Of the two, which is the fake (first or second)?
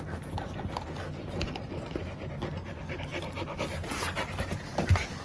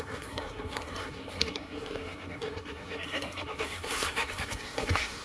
second